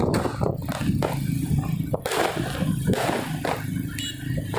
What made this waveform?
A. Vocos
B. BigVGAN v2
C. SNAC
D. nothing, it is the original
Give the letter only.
D